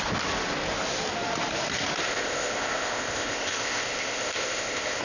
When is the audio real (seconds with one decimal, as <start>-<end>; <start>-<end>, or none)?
0.0-2.0